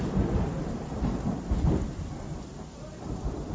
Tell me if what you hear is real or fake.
fake